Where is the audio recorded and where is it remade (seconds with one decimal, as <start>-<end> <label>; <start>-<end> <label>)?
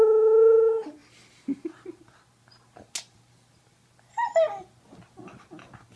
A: 0.0-6.0 recorded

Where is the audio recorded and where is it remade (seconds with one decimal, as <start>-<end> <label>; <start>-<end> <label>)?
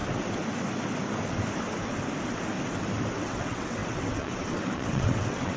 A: 0.0-3.2 recorded; 3.2-5.6 remade